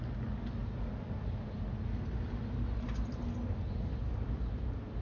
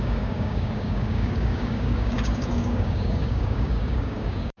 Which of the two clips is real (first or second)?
first